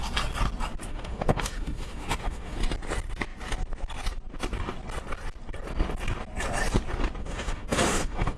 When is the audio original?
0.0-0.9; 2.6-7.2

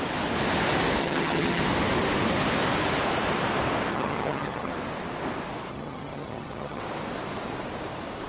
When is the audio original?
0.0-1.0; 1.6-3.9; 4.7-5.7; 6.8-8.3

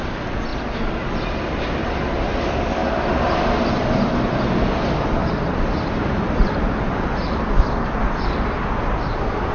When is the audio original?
0.5-1.2